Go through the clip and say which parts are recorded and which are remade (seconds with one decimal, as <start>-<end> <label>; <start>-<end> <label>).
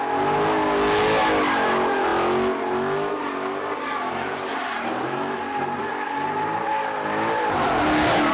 0.0-8.3 recorded